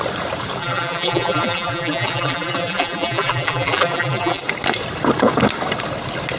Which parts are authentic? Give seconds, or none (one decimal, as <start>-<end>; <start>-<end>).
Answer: 0.0-0.6; 4.4-6.4